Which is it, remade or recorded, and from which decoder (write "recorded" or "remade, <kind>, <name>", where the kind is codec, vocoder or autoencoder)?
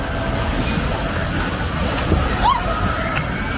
recorded